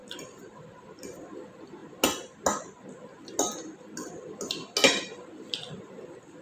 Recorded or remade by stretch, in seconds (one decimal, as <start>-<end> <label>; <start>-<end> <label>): 0.0-6.4 recorded

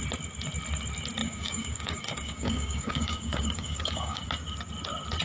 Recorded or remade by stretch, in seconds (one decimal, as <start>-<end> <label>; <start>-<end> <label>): 0.0-1.2 recorded; 1.2-4.3 remade; 4.3-5.2 recorded

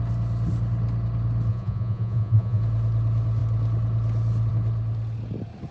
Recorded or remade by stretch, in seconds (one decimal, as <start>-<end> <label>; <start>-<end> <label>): 0.0-1.5 recorded; 1.5-2.6 remade; 2.6-5.7 recorded

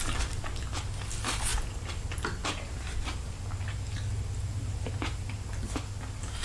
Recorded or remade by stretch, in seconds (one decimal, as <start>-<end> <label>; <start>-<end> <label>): 0.0-6.4 recorded

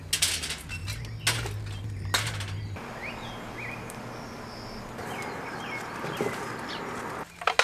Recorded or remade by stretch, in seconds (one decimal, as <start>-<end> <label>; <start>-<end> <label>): 0.0-7.6 recorded